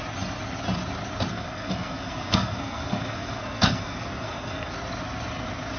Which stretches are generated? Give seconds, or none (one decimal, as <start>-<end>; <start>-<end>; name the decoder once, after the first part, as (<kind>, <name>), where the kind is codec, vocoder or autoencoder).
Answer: 1.3-4.7 (codec, SNAC)